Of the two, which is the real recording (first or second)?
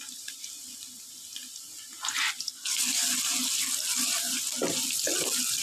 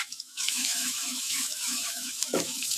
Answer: first